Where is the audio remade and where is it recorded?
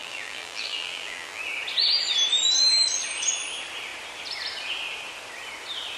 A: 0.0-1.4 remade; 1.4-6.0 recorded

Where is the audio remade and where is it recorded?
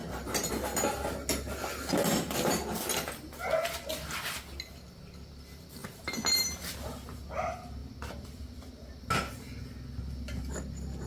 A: 0.0-11.1 recorded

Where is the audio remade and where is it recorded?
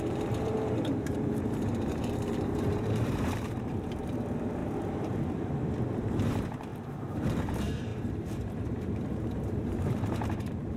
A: 0.0-10.8 remade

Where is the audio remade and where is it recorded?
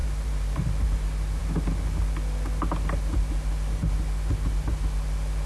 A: 0.0-0.8 remade; 0.8-5.5 recorded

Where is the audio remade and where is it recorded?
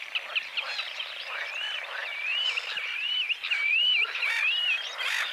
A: 0.0-0.5 recorded; 0.5-1.5 remade; 1.5-2.0 recorded; 2.0-5.3 remade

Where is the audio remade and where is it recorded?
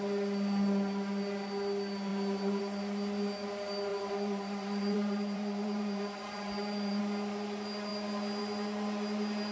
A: 0.0-3.9 recorded; 3.9-7.0 remade; 7.0-9.5 recorded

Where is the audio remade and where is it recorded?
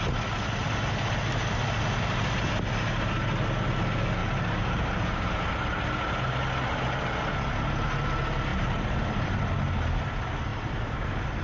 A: 0.0-4.2 recorded; 4.2-5.5 remade; 5.5-8.5 recorded; 8.5-9.4 remade; 9.4-10.5 recorded; 10.5-11.4 remade